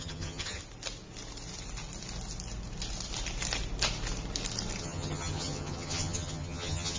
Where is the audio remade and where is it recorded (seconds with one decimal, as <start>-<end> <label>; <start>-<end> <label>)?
0.0-0.6 remade; 0.6-4.8 recorded; 4.8-7.0 remade